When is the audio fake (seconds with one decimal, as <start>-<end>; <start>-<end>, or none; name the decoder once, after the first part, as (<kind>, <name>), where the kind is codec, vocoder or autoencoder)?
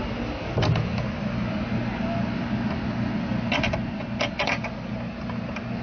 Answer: none